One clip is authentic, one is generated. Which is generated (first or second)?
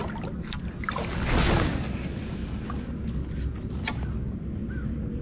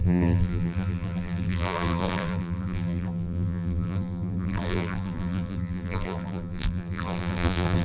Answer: second